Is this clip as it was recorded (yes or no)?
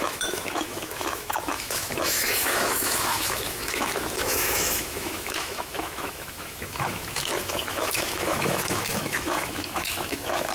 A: no